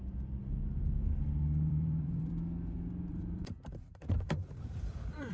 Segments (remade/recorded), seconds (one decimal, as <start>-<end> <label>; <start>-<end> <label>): 0.0-0.4 recorded; 0.4-2.3 remade; 2.3-3.1 recorded; 3.1-5.3 remade